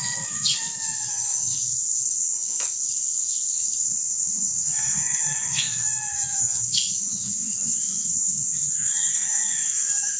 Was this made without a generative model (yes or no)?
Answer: no